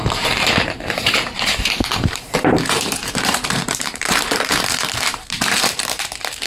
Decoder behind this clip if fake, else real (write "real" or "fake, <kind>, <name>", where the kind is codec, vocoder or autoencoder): fake, vocoder, BigVGAN v2